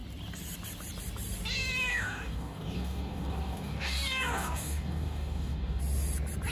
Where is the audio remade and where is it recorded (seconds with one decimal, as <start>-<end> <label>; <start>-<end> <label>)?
0.0-1.9 recorded; 1.9-5.8 remade; 5.8-6.5 recorded